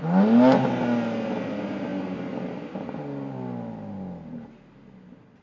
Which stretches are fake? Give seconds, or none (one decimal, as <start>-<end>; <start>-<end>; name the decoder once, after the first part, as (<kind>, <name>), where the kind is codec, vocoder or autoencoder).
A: none